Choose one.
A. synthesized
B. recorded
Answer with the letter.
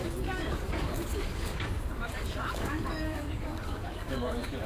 A